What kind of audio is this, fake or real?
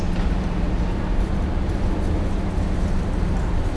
real